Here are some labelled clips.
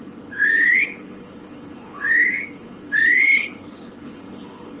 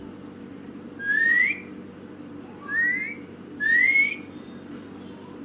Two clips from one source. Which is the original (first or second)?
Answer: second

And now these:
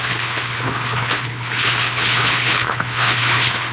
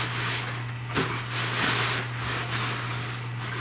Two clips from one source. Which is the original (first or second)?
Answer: second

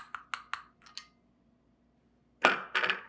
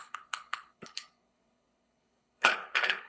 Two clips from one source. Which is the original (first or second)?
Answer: first